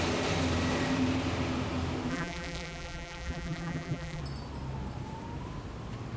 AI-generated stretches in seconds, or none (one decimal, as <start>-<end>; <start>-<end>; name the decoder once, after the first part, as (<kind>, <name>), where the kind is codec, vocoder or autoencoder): 2.1-4.2 (vocoder, BigVGAN v2)